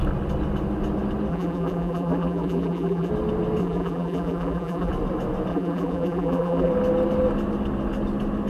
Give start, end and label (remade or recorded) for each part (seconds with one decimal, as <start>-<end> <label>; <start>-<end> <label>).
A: 0.0-1.3 recorded; 1.3-3.1 remade; 3.1-3.6 recorded; 3.6-4.9 remade; 4.9-5.5 recorded; 5.5-6.7 remade; 6.7-8.5 recorded